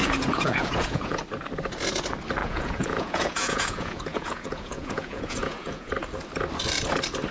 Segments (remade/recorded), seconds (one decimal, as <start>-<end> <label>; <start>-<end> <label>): 0.0-1.2 remade; 1.2-2.4 recorded; 2.4-5.9 remade; 5.9-7.3 recorded